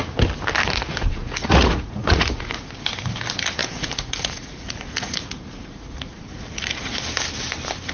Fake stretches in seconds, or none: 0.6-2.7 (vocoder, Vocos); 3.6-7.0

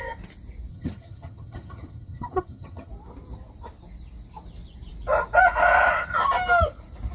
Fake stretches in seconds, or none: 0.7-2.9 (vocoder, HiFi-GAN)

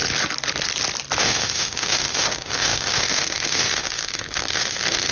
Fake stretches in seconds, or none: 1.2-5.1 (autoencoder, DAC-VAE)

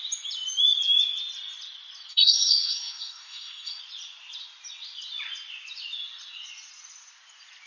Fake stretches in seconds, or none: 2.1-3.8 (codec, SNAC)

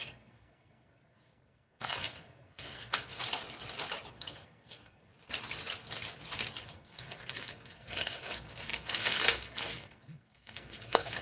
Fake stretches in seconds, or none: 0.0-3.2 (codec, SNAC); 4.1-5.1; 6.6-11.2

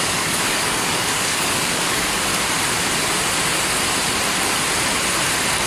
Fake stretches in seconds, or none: 0.0-2.3 (codec, DAC)